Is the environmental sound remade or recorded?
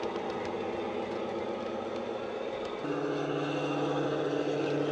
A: recorded